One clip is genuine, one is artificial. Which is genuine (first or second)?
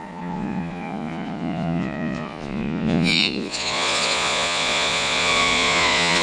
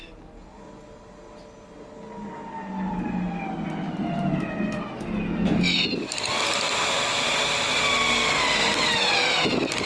second